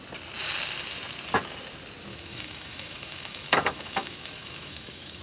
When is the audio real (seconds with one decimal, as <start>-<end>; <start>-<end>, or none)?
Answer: 0.0-2.1